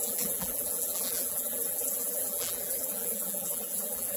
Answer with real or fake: fake